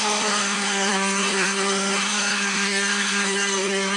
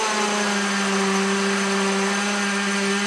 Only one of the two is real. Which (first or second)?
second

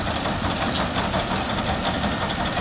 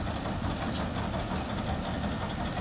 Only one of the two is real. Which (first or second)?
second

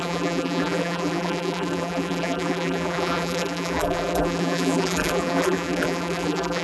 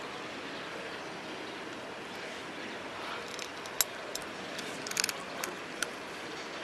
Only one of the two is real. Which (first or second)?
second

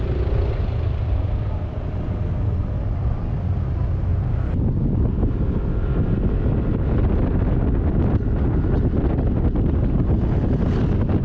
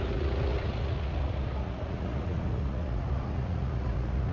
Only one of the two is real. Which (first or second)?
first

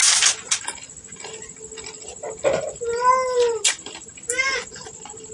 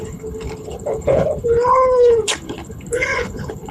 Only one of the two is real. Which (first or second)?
first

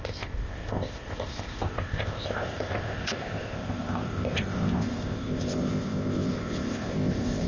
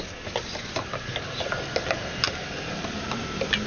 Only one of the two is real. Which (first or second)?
second